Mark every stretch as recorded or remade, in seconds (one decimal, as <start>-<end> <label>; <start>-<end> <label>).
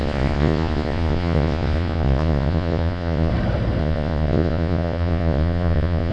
0.0-3.3 remade; 3.3-3.8 recorded; 3.8-6.1 remade